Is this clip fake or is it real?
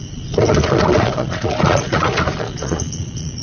fake